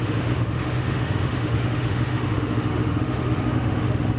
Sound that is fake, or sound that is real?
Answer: fake